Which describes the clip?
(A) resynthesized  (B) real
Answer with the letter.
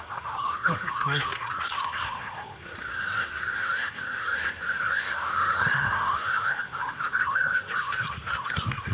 A